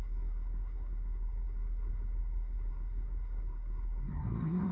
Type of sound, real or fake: fake